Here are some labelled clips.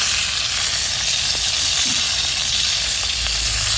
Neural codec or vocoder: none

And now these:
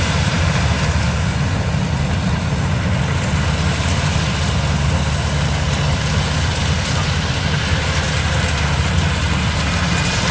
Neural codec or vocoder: none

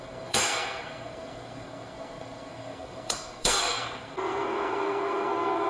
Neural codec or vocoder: codec, SNAC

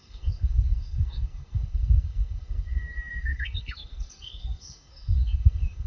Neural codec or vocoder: codec, SNAC